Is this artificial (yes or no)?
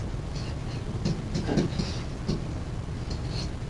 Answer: no